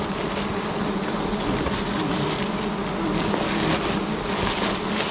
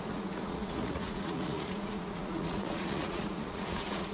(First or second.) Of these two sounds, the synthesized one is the second